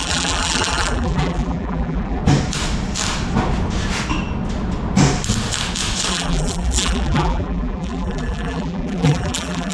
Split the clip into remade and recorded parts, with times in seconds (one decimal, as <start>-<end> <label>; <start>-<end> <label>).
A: 0.0-2.2 remade; 2.2-6.1 recorded; 6.1-9.7 remade